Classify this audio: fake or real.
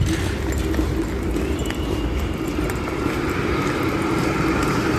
real